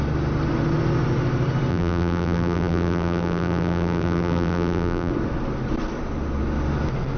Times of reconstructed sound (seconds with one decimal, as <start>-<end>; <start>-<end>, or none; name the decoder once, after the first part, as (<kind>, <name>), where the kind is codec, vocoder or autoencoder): 1.7-5.1 (vocoder, BigVGAN v2)